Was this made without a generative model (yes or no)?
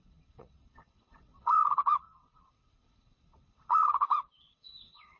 no